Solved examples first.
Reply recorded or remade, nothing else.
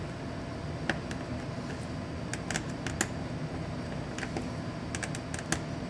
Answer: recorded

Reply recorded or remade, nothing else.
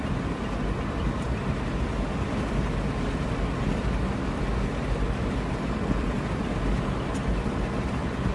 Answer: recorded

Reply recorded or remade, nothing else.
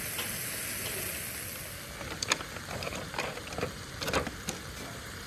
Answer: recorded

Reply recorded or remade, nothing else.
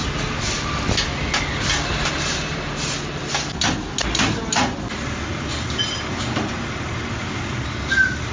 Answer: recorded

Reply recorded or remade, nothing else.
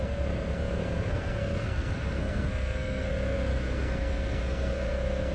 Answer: remade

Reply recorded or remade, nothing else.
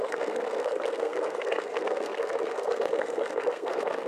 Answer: remade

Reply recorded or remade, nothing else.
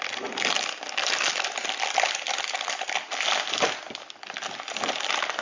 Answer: recorded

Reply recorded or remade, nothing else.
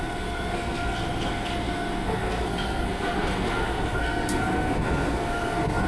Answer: remade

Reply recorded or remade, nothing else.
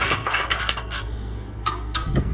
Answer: remade